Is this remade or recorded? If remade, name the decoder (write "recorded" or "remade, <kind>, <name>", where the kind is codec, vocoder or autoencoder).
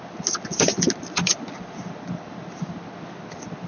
recorded